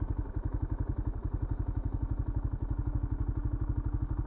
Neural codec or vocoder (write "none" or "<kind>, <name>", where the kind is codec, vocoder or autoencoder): none